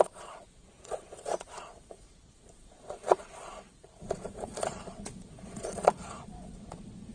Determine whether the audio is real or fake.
fake